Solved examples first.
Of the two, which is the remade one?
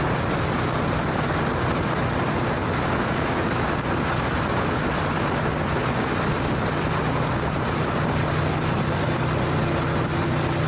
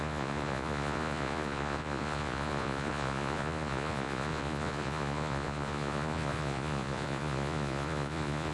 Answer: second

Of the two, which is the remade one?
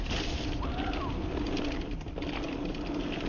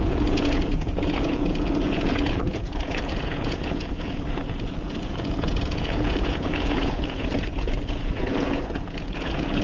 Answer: second